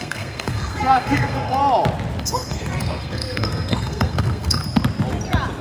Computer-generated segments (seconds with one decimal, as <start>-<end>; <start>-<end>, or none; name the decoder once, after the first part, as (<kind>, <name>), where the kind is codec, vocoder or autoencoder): 0.0-1.6 (codec, SNAC); 2.2-4.6